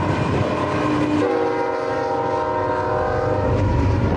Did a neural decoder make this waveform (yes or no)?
no